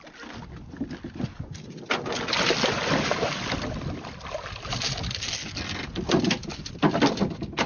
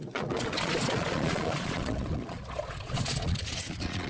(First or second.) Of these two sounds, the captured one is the first